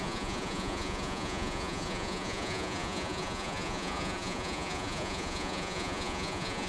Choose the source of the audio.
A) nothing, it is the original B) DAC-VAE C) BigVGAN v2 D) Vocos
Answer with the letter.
D